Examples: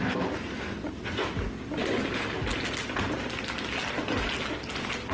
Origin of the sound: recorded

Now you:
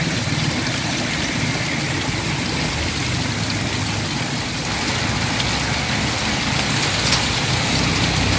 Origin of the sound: recorded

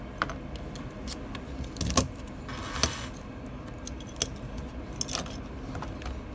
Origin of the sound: recorded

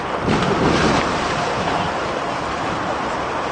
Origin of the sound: recorded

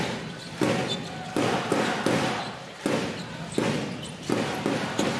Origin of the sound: recorded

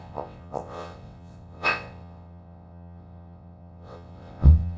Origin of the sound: remade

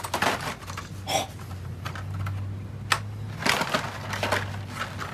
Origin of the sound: recorded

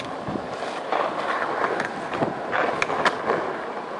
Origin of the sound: recorded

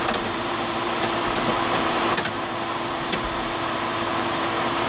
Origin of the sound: remade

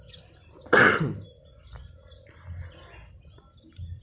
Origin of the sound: recorded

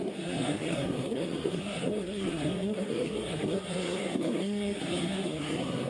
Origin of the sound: remade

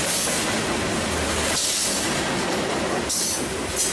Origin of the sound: recorded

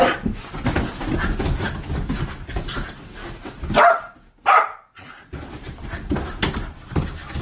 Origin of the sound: recorded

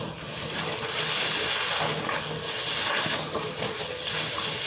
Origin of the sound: recorded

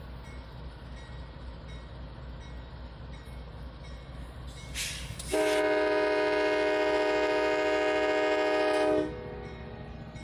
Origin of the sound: recorded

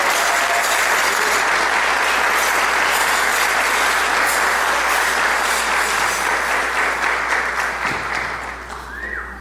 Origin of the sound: recorded